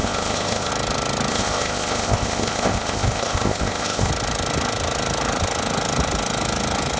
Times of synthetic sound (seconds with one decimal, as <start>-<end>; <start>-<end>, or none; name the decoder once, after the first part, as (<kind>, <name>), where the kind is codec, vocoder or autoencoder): 0.0-0.7 (codec, ZipCodec); 1.3-4.1